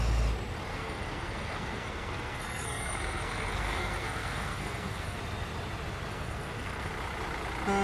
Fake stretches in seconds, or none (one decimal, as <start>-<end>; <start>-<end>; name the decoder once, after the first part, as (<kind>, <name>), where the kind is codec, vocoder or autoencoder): 0.7-5.2 (codec, SNAC); 6.1-6.9